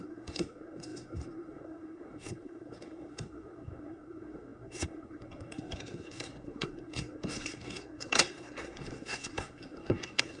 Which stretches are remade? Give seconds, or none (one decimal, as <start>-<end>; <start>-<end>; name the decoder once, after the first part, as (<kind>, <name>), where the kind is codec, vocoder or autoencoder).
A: 0.0-10.4 (codec, SNAC)